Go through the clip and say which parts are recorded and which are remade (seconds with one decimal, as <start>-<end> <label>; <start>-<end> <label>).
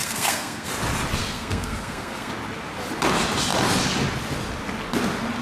0.0-0.7 remade; 0.7-1.2 recorded; 1.2-2.3 remade; 2.3-5.4 recorded